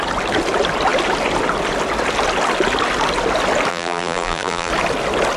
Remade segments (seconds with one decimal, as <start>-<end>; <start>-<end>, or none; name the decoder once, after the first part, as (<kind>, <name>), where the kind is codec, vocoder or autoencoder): 3.7-4.7 (vocoder, BigVGAN v2)